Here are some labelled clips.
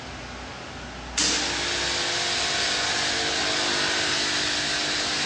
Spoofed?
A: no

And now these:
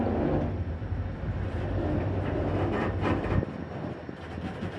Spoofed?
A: no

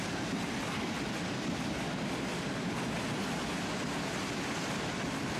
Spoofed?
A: no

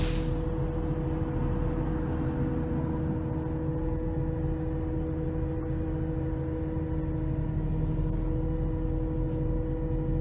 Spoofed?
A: no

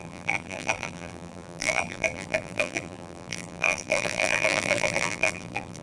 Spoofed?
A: yes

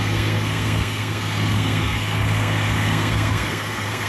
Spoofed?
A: yes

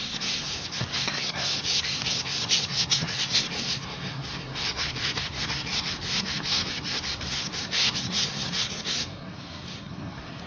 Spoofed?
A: yes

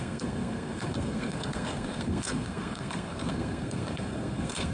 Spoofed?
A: yes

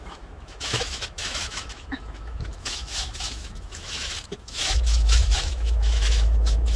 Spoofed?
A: yes